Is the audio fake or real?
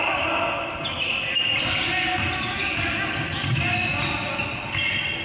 real